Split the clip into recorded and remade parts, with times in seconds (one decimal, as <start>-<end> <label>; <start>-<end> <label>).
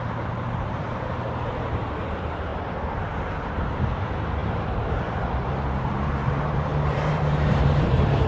0.0-2.5 remade; 2.5-3.5 recorded; 3.5-8.3 remade